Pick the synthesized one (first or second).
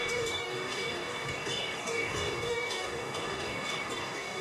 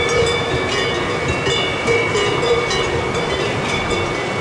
first